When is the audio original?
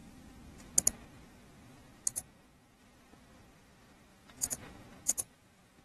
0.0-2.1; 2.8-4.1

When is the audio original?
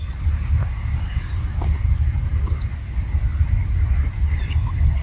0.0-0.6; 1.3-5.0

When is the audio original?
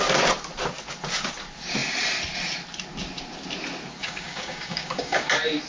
0.0-4.0; 5.3-5.7